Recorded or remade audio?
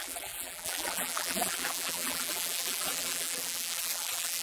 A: remade